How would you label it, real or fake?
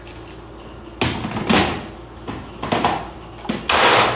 real